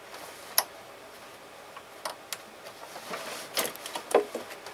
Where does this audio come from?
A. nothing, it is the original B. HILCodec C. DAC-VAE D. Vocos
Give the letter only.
A